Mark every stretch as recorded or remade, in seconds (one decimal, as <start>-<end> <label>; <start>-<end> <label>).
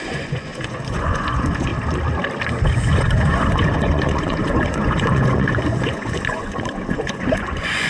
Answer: 0.0-1.7 remade; 1.7-2.6 recorded; 2.6-7.9 remade